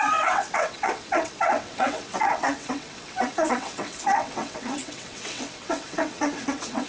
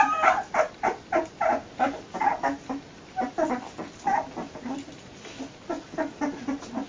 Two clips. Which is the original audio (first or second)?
second